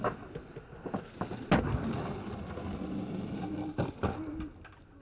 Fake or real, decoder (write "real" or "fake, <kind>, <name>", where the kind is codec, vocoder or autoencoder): real